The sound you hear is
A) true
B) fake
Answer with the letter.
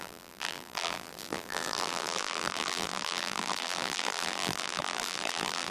B